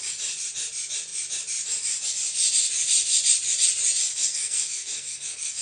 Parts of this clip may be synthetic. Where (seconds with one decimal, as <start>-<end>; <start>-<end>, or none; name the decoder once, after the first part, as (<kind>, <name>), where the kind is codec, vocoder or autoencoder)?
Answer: 4.1-5.6 (codec, SNAC)